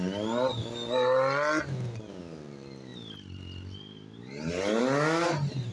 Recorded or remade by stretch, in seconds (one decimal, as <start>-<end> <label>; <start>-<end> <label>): 0.0-5.7 recorded